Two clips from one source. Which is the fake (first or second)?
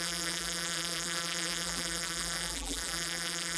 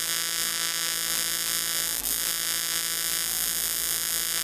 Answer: first